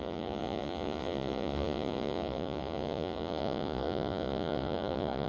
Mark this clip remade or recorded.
remade